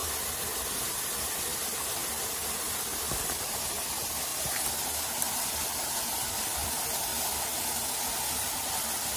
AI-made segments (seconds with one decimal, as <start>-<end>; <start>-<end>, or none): 0.0-4.3; 5.0-7.1; 8.3-9.2